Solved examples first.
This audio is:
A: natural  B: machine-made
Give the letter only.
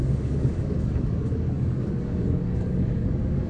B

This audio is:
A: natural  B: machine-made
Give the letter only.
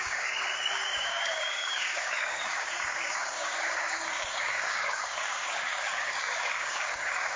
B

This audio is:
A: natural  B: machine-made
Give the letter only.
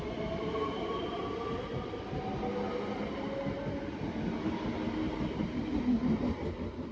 A